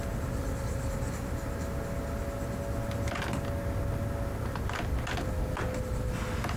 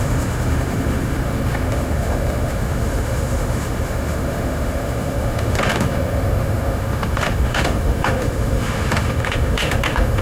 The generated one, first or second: second